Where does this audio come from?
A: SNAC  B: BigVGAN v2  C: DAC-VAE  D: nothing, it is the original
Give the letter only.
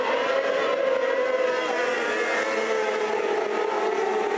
D